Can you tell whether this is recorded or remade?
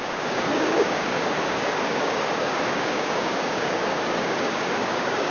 remade